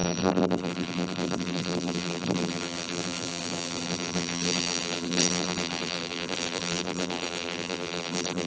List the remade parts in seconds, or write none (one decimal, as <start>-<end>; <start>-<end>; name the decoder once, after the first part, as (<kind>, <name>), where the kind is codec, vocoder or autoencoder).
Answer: 0.0-8.5 (vocoder, BigVGAN v2)